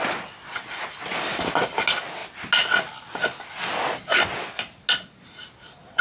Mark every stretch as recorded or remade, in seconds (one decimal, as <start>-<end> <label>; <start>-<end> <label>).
0.0-6.0 recorded